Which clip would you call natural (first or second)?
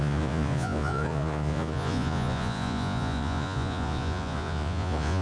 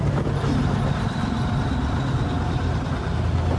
second